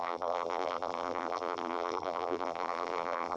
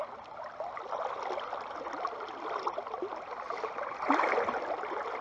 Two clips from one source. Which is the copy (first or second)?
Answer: first